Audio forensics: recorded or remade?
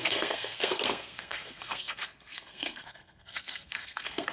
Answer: remade